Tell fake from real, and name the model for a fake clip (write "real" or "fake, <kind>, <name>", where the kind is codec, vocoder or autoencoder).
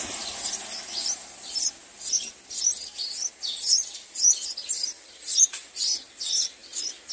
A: real